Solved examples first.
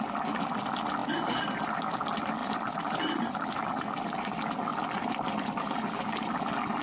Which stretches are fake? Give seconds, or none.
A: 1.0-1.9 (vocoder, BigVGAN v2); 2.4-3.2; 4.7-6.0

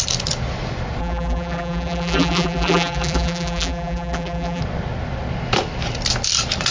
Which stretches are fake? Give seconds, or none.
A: 1.0-4.6 (vocoder, BigVGAN v2)